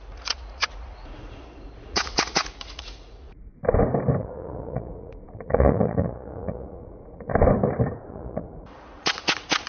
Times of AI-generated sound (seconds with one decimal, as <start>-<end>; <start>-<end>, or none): 0.0-3.5; 4.2-7.3; 8.1-9.7

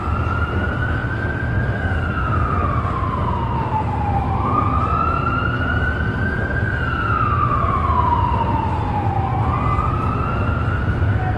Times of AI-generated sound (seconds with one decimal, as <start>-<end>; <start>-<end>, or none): 1.0-6.2

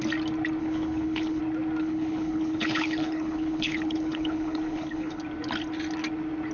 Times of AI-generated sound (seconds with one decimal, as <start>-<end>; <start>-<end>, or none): 0.6-1.4; 1.8-5.2

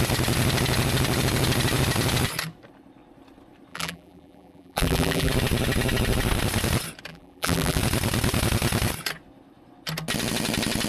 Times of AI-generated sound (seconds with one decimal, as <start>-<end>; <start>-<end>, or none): 3.7-5.3; 7.1-7.8

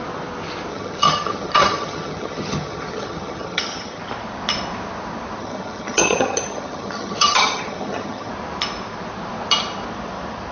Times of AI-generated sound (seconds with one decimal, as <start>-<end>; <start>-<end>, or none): 0.7-4.0; 5.4-8.3